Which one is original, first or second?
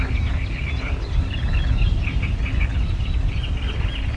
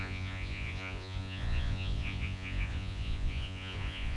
first